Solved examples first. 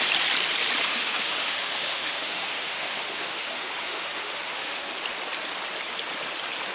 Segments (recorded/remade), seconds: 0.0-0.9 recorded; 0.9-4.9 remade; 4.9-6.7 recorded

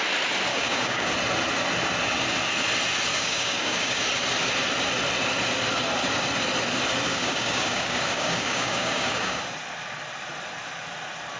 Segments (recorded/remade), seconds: 0.0-0.5 recorded; 0.5-1.1 remade; 1.1-3.1 recorded; 3.1-4.0 remade; 4.0-7.1 recorded; 7.1-9.4 remade; 9.4-11.4 recorded

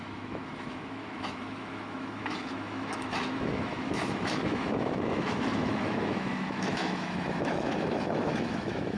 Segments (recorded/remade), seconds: 0.0-9.0 remade

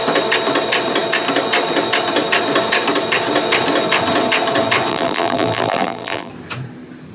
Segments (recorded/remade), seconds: 0.0-4.9 recorded; 4.9-6.3 remade; 6.3-7.1 recorded

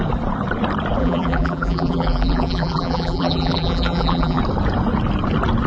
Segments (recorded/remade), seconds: 0.0-1.0 recorded; 1.0-4.4 remade; 4.4-5.7 recorded

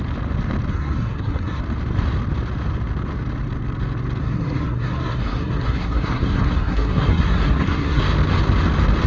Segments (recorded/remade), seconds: 0.0-0.7 recorded; 0.7-1.6 remade; 1.6-4.2 recorded; 4.2-8.0 remade; 8.0-9.1 recorded

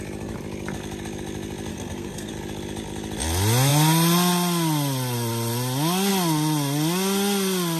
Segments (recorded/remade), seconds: 0.0-1.7 recorded; 1.7-2.3 remade; 2.3-7.8 recorded